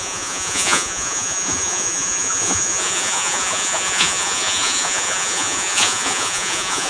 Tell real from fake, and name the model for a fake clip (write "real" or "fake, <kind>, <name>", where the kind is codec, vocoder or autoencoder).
fake, vocoder, Vocos